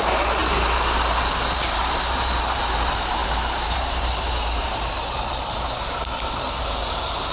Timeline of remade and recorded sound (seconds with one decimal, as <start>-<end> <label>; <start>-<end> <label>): 0.0-7.3 remade